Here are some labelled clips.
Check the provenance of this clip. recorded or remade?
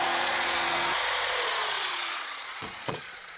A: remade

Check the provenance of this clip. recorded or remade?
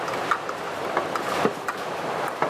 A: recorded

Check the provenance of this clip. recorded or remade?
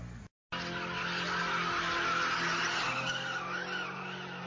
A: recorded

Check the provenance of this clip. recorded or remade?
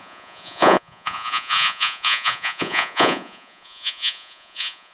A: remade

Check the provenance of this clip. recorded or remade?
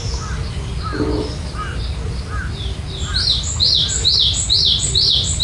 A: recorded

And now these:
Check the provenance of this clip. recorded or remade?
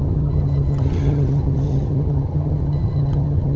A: remade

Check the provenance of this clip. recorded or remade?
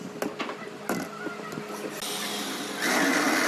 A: recorded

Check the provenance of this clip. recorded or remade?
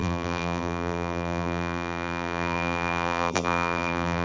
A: remade